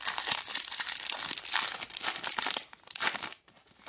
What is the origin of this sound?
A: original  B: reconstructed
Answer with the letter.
A